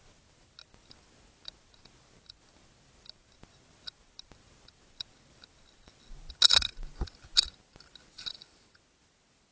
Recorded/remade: recorded